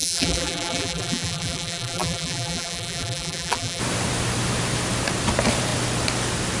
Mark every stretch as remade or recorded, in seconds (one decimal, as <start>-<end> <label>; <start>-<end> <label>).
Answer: 0.0-3.8 remade; 3.8-6.6 recorded